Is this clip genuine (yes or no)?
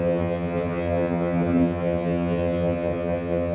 no